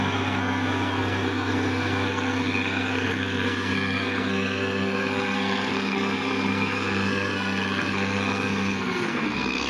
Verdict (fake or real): fake